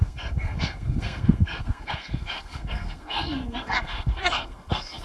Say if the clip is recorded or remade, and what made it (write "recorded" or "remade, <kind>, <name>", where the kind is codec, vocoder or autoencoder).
remade, codec, SNAC